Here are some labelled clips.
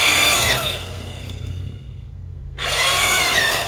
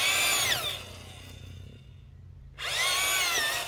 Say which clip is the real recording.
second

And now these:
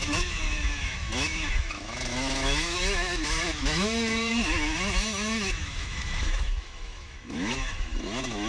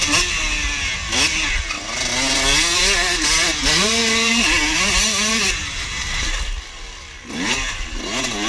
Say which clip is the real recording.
second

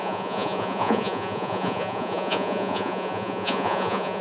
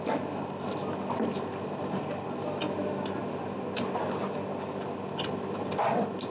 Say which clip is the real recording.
second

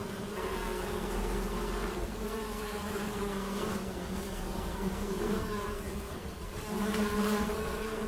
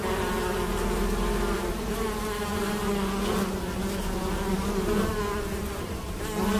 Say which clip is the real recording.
second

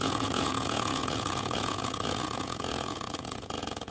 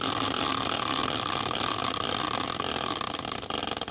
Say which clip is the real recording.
second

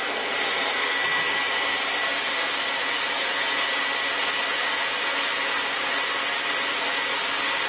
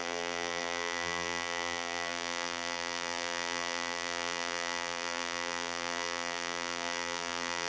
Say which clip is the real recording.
first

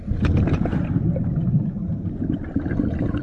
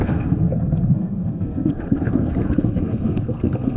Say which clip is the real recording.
first